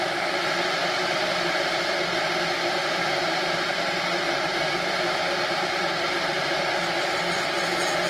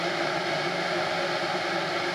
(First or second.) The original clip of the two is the second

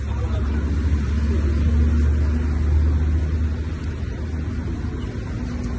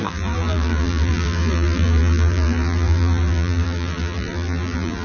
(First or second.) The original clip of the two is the first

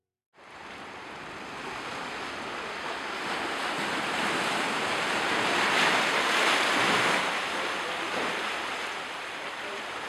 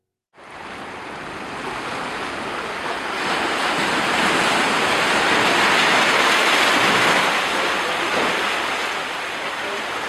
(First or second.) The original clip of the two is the second